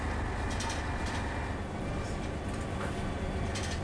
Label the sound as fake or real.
real